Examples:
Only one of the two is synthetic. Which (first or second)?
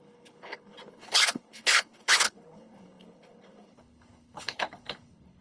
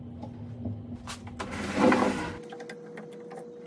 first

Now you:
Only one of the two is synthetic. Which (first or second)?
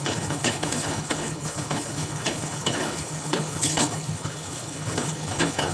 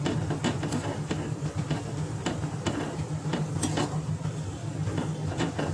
first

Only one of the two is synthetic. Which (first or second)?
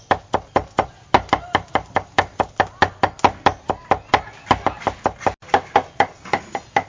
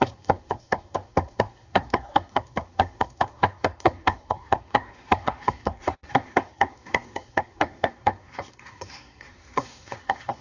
second